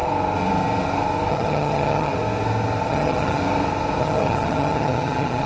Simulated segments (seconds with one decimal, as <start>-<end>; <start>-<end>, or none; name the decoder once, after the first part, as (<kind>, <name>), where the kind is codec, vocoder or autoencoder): 1.3-2.1 (vocoder, HiFi-GAN); 2.9-3.4; 4.0-5.5